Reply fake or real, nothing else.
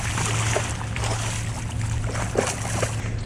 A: real